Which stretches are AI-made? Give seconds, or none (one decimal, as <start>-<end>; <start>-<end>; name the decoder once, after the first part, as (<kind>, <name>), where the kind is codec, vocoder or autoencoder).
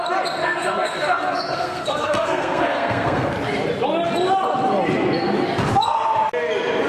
0.4-3.3 (codec, SNAC)